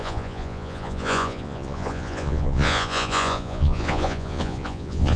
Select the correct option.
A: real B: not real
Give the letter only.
B